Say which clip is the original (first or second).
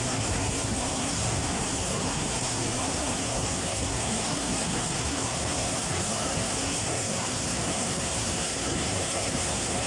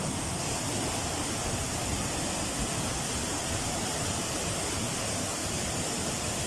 second